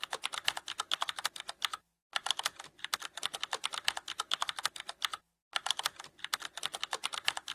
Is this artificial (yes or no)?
no